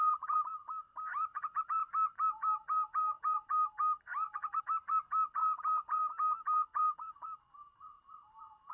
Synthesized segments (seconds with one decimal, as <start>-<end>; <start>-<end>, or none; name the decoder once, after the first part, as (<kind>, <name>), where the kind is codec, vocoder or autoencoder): 0.0-8.7 (vocoder, BigVGAN v2)